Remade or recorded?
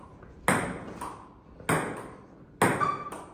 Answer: recorded